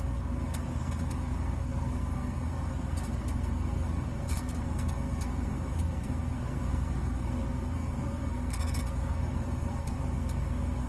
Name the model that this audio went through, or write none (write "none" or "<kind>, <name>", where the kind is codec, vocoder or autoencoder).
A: codec, SNAC